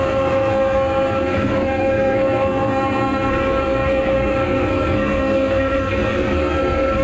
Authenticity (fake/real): fake